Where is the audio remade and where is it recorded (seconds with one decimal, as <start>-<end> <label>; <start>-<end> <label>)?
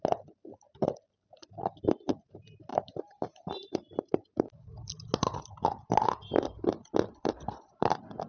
0.0-2.7 recorded; 2.7-4.1 remade; 4.1-8.3 recorded